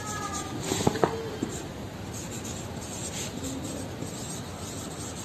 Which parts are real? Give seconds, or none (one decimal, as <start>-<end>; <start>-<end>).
0.0-5.2